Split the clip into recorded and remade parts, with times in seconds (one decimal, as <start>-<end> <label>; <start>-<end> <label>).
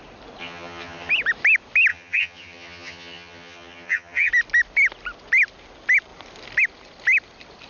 0.0-0.4 recorded; 0.4-1.1 remade; 1.1-1.9 recorded; 1.9-4.3 remade; 4.3-7.7 recorded